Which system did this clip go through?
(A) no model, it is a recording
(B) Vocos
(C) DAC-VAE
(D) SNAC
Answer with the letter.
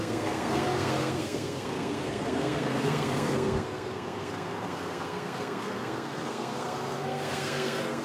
D